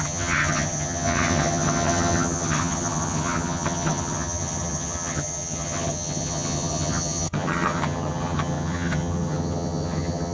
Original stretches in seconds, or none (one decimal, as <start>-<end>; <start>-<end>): none